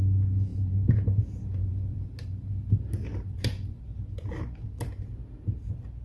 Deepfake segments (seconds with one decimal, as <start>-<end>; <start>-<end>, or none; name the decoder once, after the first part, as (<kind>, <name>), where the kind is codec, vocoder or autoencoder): 0.5-3.8 (vocoder, BigVGAN v2)